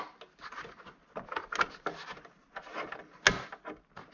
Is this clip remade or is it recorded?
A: recorded